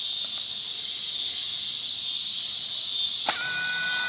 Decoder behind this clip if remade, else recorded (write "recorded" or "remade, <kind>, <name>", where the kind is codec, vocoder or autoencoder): recorded